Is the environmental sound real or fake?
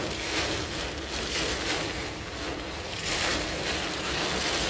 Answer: fake